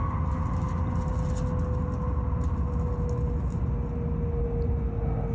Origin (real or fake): real